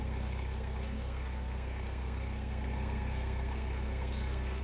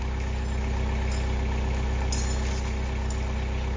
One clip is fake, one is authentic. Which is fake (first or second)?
first